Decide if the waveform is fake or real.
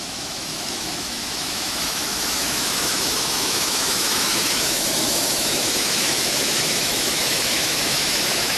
fake